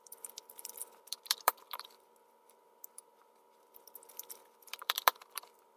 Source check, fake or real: fake